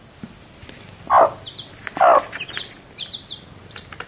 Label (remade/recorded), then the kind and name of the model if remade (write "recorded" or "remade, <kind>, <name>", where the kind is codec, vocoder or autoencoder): recorded